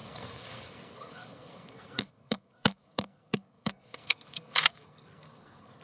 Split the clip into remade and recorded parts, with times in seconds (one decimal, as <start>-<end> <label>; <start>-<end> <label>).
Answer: 0.0-5.8 remade